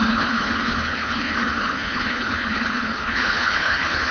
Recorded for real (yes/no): no